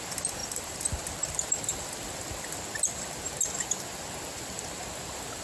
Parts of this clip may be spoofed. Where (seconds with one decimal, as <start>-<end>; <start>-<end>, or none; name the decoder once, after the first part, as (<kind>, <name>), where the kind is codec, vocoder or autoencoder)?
0.4-0.9 (vocoder, BigVGAN v2)